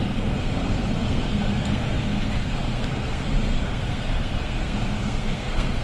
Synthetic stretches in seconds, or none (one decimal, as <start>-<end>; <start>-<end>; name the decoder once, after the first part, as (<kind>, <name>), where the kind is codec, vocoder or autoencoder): 0.0-5.8 (codec, SNAC)